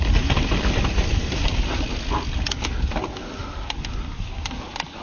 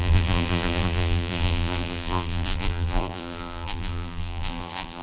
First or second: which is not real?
second